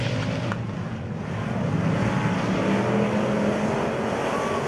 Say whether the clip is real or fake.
real